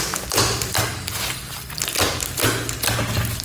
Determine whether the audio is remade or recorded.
recorded